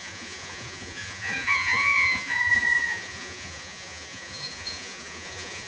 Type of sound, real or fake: fake